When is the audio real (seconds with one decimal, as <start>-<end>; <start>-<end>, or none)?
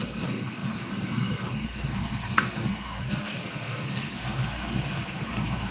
none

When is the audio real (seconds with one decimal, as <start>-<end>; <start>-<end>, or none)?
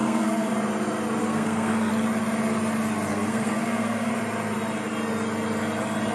0.5-1.2; 1.9-3.1; 4.1-6.1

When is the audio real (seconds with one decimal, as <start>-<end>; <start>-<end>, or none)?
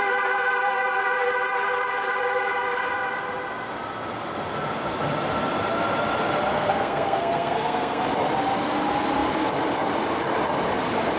0.0-6.5; 8.0-11.2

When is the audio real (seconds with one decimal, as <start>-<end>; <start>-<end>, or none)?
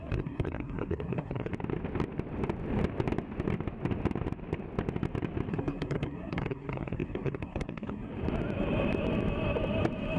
1.5-5.5; 8.1-10.2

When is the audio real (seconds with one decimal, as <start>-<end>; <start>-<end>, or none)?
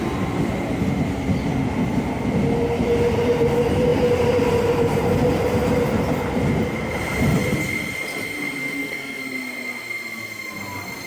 0.0-8.6; 9.2-11.1